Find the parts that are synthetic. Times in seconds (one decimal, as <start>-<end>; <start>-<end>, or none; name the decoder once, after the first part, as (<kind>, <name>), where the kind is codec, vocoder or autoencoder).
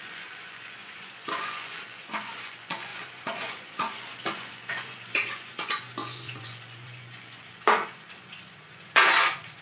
0.0-9.6 (vocoder, Vocos)